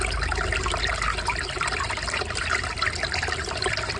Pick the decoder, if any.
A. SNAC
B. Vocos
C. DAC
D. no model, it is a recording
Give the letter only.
D